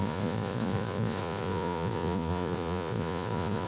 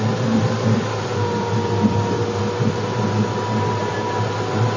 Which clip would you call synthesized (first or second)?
first